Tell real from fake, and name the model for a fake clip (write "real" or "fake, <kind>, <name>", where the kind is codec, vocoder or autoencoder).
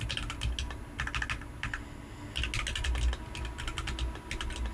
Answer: real